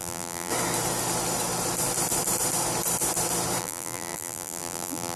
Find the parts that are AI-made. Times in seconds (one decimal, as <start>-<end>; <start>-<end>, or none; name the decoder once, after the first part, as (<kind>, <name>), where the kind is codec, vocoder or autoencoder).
0.0-0.5 (vocoder, BigVGAN v2); 3.6-5.2